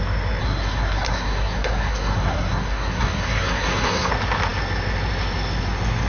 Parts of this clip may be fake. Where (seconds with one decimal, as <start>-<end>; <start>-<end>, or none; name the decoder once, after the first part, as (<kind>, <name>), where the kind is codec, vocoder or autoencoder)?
0.4-4.1 (codec, SNAC)